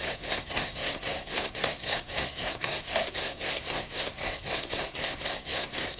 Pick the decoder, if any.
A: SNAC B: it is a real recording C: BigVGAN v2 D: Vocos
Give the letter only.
A